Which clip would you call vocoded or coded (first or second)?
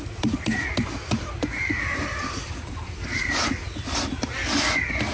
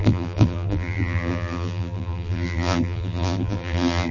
second